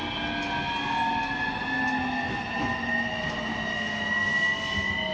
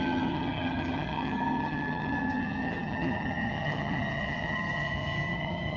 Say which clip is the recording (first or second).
first